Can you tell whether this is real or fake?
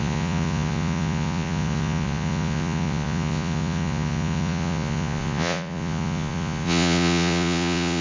fake